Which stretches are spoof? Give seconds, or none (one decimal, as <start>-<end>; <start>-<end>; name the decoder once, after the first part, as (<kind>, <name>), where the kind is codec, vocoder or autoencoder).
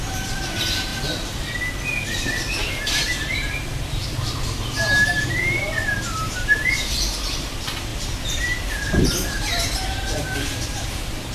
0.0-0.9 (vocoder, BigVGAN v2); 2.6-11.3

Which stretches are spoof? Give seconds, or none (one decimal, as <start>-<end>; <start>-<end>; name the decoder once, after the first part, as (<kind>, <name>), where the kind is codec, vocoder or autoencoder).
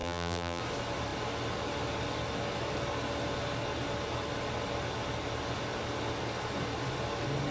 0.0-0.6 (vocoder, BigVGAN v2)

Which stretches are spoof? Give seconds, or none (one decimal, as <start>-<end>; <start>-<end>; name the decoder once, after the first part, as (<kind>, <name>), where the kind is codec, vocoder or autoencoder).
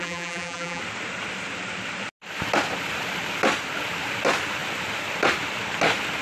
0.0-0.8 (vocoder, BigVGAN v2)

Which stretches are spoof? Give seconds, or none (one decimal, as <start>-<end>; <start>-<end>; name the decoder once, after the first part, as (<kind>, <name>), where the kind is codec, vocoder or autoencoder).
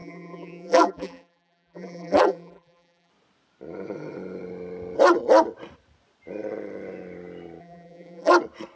0.0-3.1 (vocoder, BigVGAN v2); 7.6-8.3